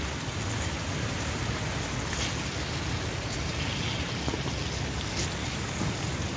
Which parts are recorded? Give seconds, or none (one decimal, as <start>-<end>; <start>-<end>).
0.0-5.4; 5.9-6.4